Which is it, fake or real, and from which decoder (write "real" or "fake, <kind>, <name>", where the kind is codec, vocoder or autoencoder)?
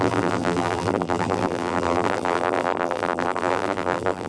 fake, vocoder, BigVGAN v2